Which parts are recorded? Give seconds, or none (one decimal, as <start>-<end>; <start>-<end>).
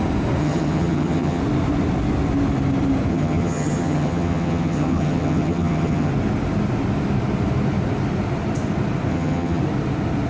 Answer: 0.0-0.4; 1.4-3.1; 6.1-9.1; 9.6-10.3